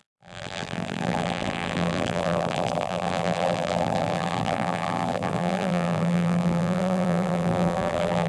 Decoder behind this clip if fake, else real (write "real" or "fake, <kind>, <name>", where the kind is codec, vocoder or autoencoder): fake, vocoder, BigVGAN v2